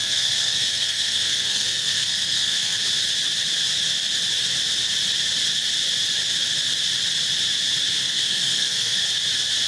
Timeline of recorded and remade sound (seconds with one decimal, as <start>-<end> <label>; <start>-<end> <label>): 0.0-2.8 remade; 2.8-8.0 recorded; 8.0-9.0 remade; 9.0-9.7 recorded